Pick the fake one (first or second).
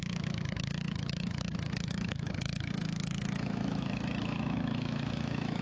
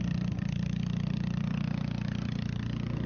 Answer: first